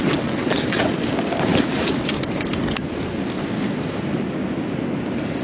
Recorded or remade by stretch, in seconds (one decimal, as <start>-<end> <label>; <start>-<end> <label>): 0.0-0.9 remade; 0.9-5.4 recorded